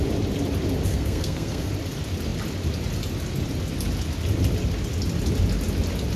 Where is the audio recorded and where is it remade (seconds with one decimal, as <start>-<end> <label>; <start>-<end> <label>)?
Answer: 0.0-0.9 recorded; 0.9-1.7 remade; 1.7-6.2 recorded